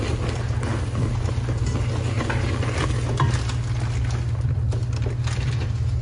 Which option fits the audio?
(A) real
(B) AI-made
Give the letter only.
A